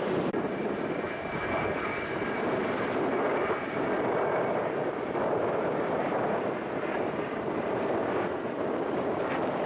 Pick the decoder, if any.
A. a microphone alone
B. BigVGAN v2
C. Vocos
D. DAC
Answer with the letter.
B